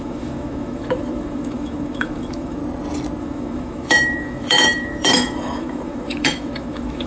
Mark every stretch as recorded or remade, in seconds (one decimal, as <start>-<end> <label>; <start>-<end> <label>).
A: 0.0-2.6 remade; 2.6-3.2 recorded; 3.2-7.1 remade